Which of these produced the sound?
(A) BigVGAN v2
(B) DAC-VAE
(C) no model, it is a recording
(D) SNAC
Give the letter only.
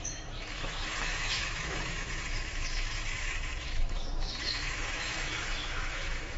B